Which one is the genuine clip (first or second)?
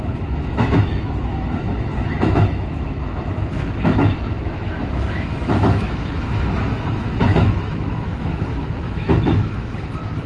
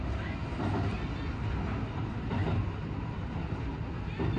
second